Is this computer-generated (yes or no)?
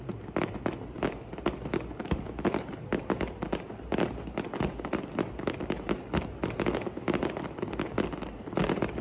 no